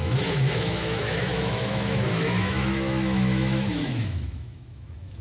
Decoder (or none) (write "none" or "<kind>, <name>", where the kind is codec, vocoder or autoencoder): autoencoder, DAC-VAE